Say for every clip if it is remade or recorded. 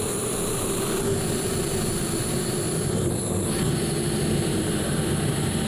recorded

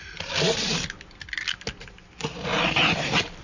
recorded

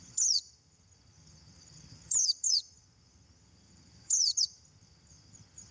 remade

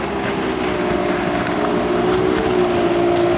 recorded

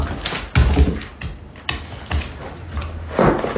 recorded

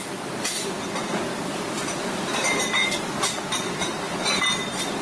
recorded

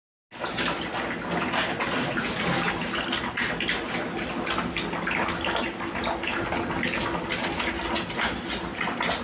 recorded